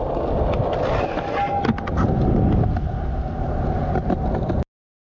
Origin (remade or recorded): recorded